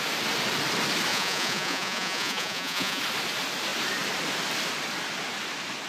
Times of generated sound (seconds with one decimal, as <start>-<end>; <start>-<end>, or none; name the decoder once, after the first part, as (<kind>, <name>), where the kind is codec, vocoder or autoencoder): 1.1-3.0 (vocoder, Vocos)